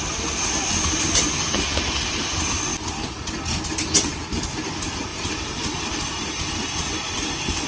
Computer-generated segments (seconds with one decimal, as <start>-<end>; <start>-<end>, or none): none